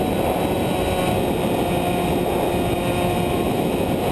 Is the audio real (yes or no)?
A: yes